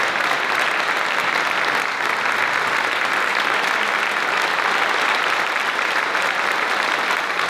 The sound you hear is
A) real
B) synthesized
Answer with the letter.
A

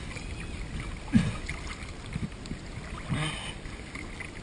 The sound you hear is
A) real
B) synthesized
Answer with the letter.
A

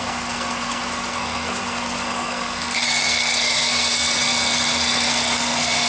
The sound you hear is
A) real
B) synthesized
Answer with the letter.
B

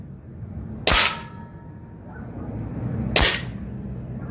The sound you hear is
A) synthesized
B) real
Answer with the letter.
B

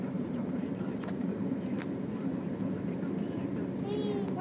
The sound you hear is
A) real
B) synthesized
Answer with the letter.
B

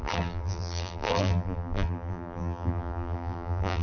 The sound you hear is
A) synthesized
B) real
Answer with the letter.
A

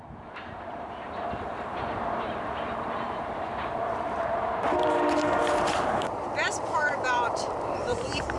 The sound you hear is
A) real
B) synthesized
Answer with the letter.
B